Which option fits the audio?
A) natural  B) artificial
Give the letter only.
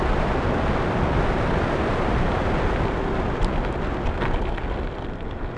A